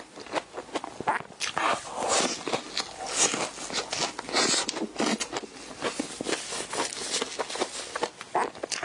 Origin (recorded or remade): recorded